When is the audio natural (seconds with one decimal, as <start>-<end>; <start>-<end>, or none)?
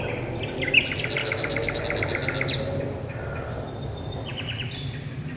0.0-1.2; 1.8-5.4